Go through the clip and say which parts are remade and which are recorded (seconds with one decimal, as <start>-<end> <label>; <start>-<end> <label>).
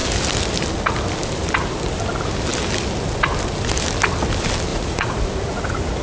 0.0-4.7 recorded; 4.7-5.2 remade; 5.2-6.0 recorded